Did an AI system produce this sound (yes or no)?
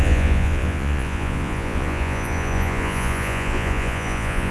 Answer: yes